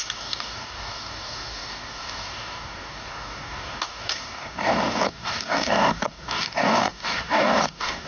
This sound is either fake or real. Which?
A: fake